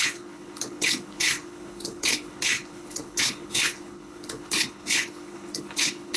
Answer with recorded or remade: remade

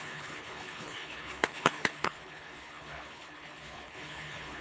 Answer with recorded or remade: remade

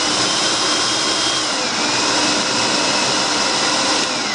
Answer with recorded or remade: recorded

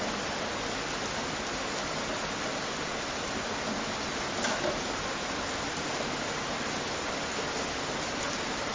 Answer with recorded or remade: recorded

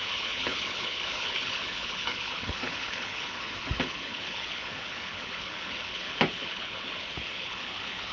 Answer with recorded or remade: remade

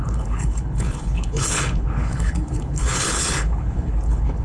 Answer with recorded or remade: remade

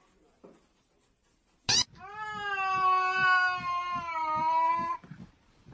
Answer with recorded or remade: recorded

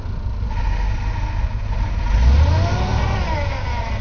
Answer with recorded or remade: recorded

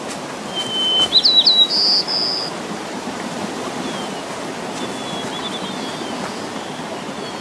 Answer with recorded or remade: recorded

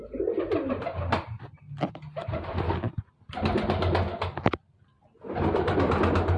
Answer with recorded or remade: recorded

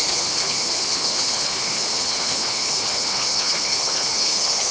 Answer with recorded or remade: remade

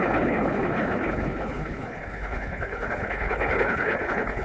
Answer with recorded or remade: remade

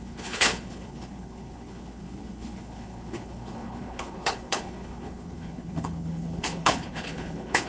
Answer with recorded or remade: remade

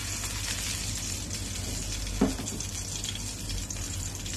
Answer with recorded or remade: recorded